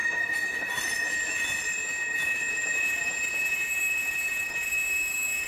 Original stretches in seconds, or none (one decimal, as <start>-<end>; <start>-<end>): 0.0-1.9